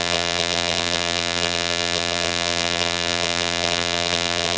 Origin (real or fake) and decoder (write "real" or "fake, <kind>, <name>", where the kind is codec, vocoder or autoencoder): fake, vocoder, BigVGAN v2